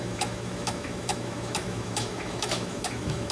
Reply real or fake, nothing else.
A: fake